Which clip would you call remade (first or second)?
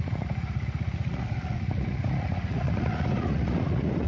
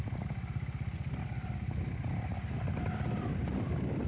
first